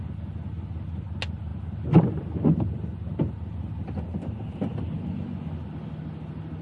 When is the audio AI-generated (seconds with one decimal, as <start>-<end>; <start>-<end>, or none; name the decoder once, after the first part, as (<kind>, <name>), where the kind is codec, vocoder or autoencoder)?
none